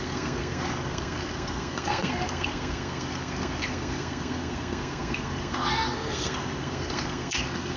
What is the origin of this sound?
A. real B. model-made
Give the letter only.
B